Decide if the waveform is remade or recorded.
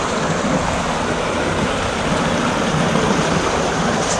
recorded